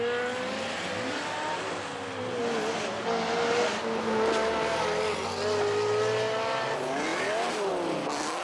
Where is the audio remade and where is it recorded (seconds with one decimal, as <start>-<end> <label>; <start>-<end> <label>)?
0.0-8.4 recorded